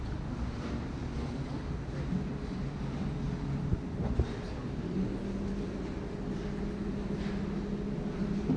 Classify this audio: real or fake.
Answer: real